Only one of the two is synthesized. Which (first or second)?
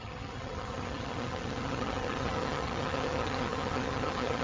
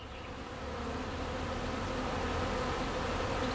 first